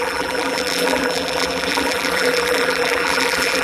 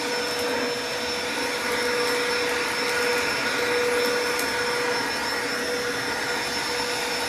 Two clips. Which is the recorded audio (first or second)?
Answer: second